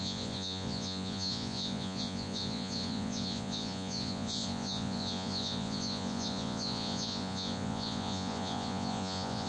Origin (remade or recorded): remade